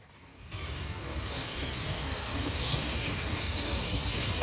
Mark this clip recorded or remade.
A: remade